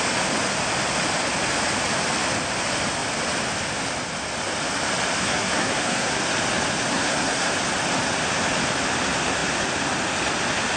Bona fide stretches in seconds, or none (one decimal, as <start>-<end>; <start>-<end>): 0.0-5.2; 6.2-6.9; 7.5-10.8

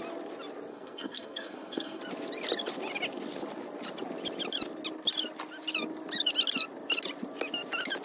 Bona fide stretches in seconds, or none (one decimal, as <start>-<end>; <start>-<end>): 0.0-0.7; 2.0-8.0

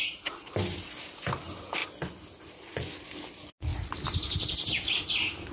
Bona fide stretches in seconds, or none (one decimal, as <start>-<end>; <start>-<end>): 0.0-5.5

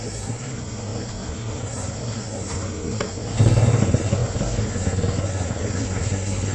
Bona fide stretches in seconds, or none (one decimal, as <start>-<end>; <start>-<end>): none